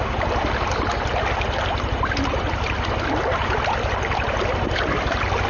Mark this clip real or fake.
fake